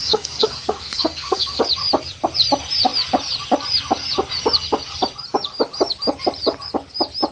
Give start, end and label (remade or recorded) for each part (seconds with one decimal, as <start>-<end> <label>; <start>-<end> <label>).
0.0-1.6 remade; 1.6-7.3 recorded